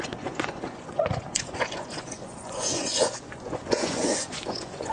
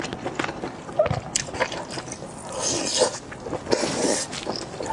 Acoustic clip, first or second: second